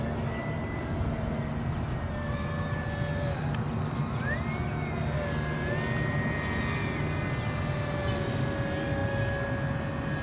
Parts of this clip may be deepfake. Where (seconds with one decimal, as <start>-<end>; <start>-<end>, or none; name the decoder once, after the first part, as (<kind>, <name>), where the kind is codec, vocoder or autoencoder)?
none